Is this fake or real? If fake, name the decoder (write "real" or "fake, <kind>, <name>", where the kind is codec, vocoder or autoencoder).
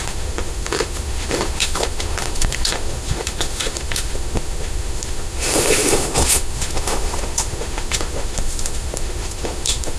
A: fake, autoencoder, DAC-VAE